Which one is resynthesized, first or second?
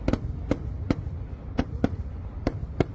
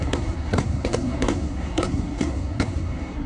second